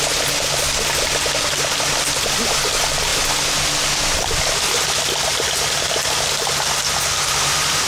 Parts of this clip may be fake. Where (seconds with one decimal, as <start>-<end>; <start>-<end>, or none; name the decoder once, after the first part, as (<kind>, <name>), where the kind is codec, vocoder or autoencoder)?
none